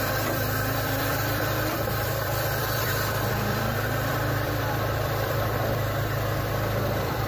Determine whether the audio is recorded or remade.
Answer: remade